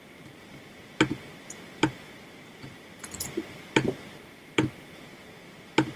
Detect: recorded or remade recorded